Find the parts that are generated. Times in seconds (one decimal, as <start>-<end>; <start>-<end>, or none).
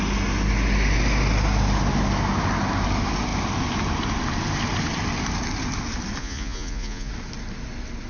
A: 6.2-7.1